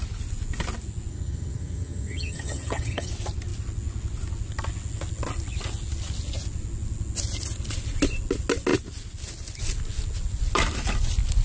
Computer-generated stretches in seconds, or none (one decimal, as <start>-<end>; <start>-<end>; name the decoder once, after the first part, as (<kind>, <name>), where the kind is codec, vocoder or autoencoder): 1.1-3.1 (vocoder, HiFi-GAN)